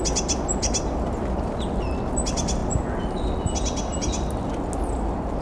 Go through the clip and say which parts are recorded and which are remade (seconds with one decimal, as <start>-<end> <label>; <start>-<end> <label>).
0.0-5.4 recorded